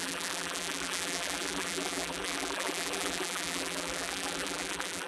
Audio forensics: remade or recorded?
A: remade